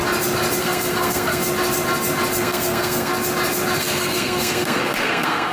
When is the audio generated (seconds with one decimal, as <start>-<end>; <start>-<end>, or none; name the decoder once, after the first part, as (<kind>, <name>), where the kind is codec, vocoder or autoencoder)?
0.6-1.4 (codec, SNAC); 2.4-3.1; 3.8-5.5